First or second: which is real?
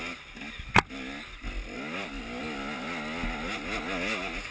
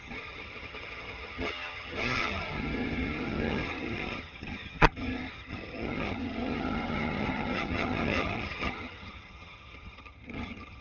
first